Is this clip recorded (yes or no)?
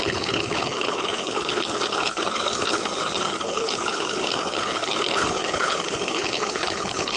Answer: no